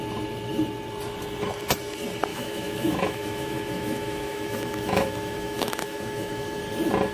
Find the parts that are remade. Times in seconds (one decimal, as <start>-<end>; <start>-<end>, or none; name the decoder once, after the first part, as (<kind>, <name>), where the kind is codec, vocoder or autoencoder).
2.3-6.6 (autoencoder, DAC-VAE)

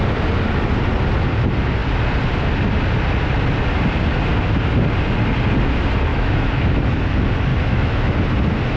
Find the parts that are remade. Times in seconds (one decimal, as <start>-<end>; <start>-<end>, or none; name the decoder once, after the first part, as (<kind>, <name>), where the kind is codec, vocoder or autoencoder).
6.1-6.8 (autoencoder, DAC-VAE); 7.5-8.1

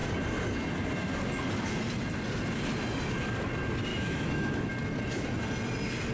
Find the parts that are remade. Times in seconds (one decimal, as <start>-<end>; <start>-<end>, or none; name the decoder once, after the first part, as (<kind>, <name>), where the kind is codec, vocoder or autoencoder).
3.9-4.7 (autoencoder, DAC-VAE)